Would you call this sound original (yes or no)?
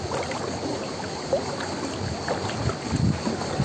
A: yes